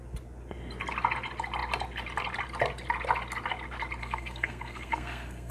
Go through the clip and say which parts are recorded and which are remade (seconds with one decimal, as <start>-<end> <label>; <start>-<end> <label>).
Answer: 0.0-4.0 recorded; 4.0-5.5 remade